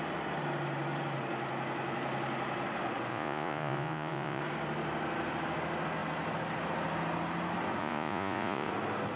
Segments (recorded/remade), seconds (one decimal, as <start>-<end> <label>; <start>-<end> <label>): 0.0-3.1 recorded; 3.1-4.4 remade; 4.4-7.8 recorded; 7.8-8.7 remade; 8.7-9.2 recorded